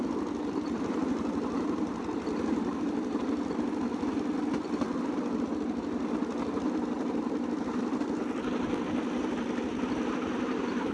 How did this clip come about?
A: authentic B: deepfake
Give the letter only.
A